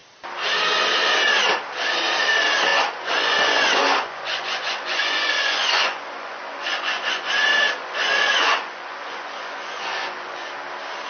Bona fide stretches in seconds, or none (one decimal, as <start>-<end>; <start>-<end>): 0.0-2.7; 7.3-7.8; 10.5-11.1